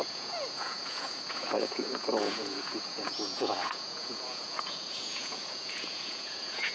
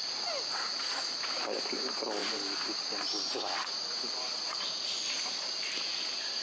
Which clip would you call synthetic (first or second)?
first